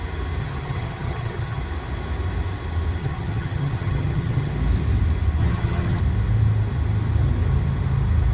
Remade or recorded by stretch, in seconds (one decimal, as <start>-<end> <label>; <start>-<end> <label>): 0.0-0.4 recorded; 0.4-1.6 remade; 1.6-3.0 recorded; 3.0-4.5 remade; 4.5-5.4 recorded; 5.4-6.0 remade; 6.0-8.3 recorded